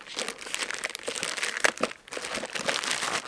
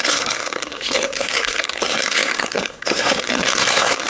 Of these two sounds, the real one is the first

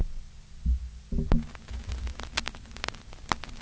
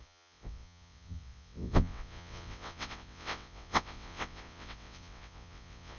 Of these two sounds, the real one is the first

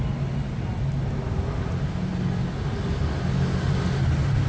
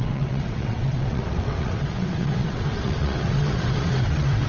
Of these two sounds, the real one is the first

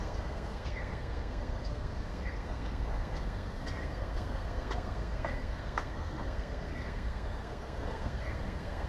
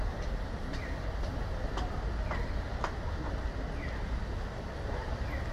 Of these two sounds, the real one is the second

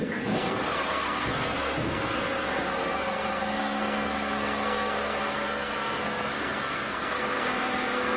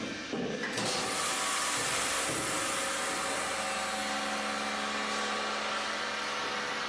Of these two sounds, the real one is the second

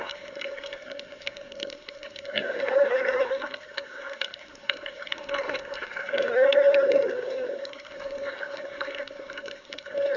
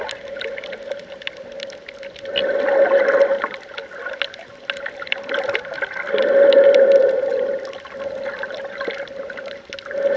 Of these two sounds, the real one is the second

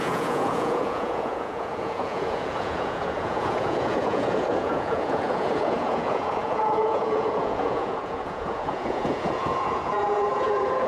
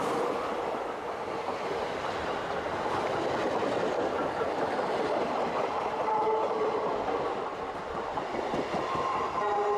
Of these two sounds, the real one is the second